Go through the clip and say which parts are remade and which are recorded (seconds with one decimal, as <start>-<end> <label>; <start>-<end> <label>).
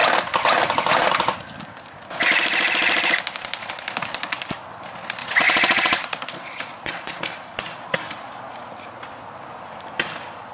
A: 0.0-5.2 recorded; 5.2-7.2 remade; 7.2-10.5 recorded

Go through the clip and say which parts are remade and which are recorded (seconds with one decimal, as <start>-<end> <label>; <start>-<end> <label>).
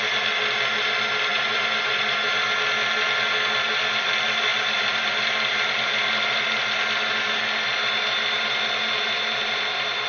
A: 0.0-1.3 recorded; 1.3-2.3 remade; 2.3-10.1 recorded